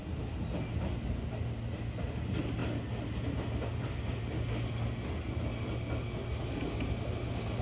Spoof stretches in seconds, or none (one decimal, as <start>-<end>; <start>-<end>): none